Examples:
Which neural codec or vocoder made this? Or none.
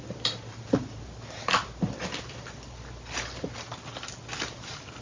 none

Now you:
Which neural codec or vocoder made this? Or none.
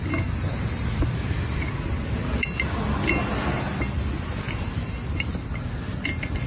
none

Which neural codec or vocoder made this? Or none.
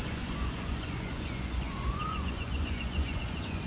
vocoder, Vocos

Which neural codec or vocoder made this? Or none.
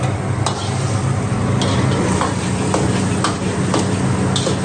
none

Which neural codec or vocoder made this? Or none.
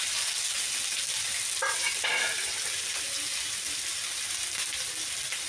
none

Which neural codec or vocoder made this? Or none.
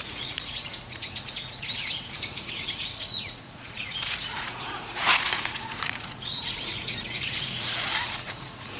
vocoder, Vocos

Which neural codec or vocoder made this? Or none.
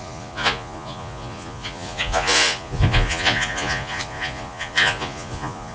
vocoder, Vocos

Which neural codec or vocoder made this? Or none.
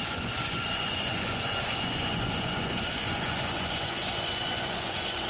vocoder, Vocos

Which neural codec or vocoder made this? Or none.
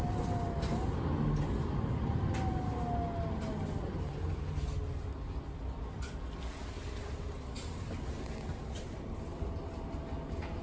none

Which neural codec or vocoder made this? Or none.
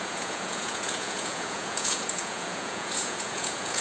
vocoder, Vocos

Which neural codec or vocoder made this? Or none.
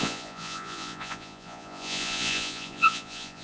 vocoder, Vocos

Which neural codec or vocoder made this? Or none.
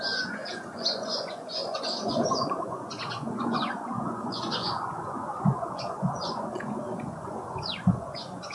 vocoder, Vocos